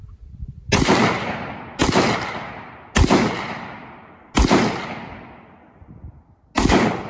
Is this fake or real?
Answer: real